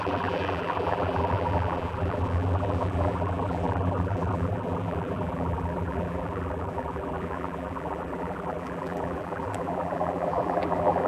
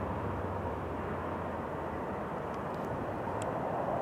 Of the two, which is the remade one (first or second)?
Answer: first